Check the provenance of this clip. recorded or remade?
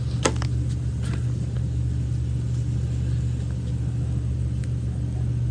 recorded